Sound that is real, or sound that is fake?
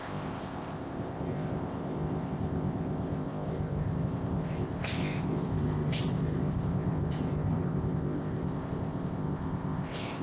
fake